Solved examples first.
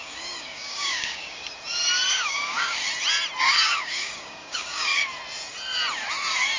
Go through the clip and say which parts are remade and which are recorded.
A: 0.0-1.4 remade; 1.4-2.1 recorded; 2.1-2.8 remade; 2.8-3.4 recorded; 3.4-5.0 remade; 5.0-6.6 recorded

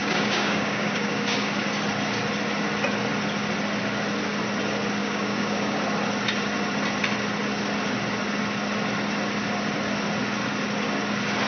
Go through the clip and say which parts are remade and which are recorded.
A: 0.0-1.6 remade; 1.6-5.0 recorded; 5.0-5.8 remade; 5.8-11.5 recorded

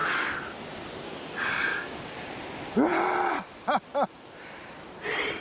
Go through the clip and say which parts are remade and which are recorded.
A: 0.0-1.7 recorded; 1.7-2.3 remade; 2.3-5.4 recorded

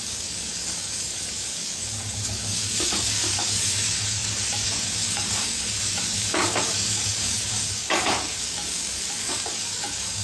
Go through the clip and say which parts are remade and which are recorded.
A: 0.0-10.2 remade

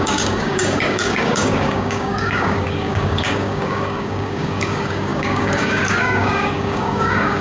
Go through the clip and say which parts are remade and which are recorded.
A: 0.0-7.4 remade

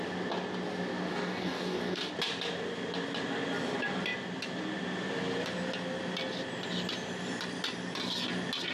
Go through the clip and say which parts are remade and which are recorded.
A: 0.0-1.1 recorded; 1.1-2.1 remade; 2.1-8.7 recorded

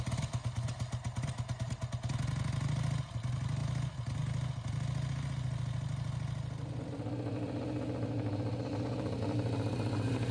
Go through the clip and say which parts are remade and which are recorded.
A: 0.0-10.3 recorded

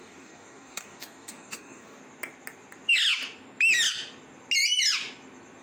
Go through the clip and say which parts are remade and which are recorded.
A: 0.0-2.0 remade; 2.0-5.6 recorded